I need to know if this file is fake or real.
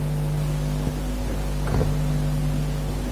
real